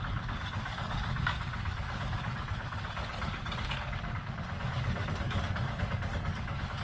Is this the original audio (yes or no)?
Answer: no